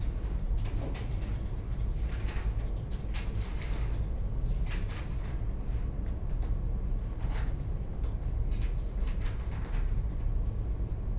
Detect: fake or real real